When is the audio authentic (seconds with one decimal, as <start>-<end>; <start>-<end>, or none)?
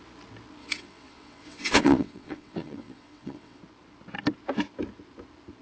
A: 0.0-0.6; 3.6-5.6